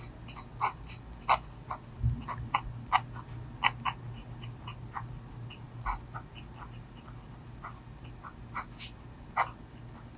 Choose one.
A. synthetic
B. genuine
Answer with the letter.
B